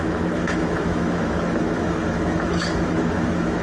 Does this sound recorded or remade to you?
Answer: remade